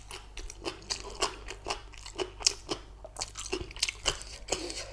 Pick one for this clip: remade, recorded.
recorded